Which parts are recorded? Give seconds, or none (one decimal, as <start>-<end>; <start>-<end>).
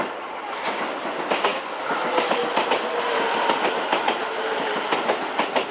0.0-5.7